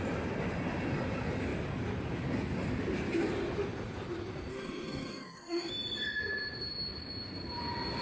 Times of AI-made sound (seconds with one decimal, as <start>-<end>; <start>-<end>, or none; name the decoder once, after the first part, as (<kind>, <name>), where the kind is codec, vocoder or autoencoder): 4.5-5.7 (autoencoder, DAC-VAE)